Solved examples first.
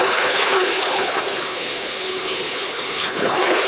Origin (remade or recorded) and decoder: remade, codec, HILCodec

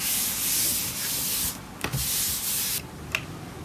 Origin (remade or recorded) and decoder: recorded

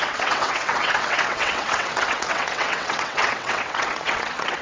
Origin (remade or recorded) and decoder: remade, vocoder, WaveNeXt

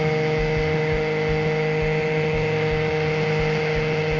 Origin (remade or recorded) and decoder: recorded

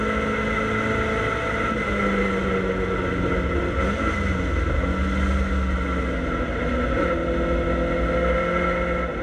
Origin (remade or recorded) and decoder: recorded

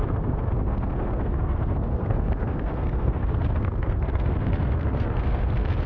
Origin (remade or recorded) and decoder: remade, codec, SNAC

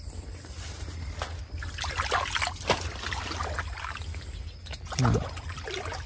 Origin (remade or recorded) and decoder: recorded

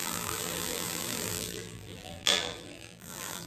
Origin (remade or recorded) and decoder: remade, vocoder, BigVGAN v2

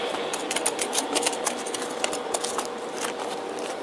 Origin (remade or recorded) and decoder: remade, vocoder, BigVGAN v2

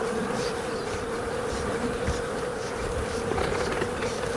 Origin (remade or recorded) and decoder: remade, vocoder, BigVGAN v2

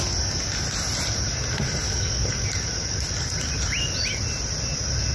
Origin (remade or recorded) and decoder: recorded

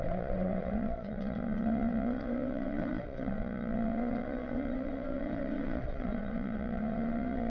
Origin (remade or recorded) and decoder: remade, vocoder, WaveNeXt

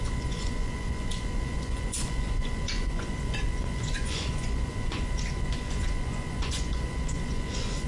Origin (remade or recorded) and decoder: remade, vocoder, Vocos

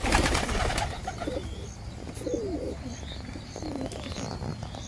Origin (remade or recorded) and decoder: recorded